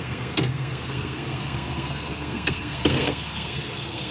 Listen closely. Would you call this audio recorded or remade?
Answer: remade